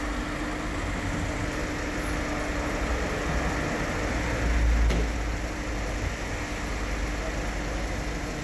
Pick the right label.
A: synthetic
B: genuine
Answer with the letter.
B